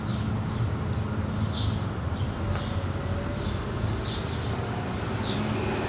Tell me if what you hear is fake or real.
real